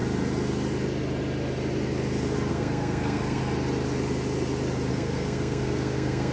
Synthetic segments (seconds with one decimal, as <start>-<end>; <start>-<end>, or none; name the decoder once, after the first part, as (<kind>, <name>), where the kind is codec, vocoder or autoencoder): 2.5-3.4 (codec, SNAC); 4.9-6.3

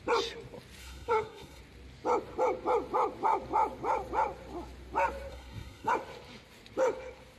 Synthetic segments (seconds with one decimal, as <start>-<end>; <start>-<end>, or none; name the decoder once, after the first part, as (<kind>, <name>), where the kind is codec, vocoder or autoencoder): 0.8-1.6 (codec, SNAC); 5.3-5.9

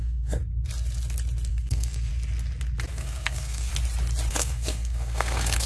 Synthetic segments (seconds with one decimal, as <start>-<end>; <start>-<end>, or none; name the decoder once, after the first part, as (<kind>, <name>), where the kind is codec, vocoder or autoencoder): 0.0-0.4 (codec, SNAC); 1.5-2.1; 2.9-3.7; 4.3-5.7

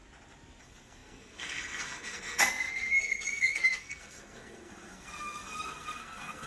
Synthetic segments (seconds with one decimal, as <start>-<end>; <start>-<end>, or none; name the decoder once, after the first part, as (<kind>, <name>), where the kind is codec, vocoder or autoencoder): 0.6-6.5 (codec, SNAC)

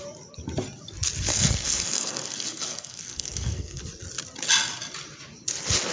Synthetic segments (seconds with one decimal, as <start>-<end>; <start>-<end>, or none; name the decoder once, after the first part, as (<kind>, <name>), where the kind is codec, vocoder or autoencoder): 1.3-3.8 (codec, SNAC)

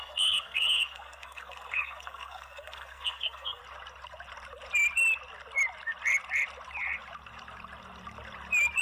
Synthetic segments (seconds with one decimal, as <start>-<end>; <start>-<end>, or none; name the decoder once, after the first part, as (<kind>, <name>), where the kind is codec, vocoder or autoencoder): 0.0-3.6 (codec, SNAC)